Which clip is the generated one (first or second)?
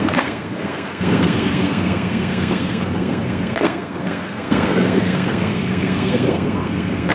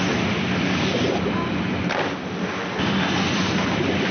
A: first